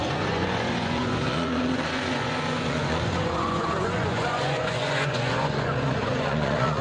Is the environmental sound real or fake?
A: fake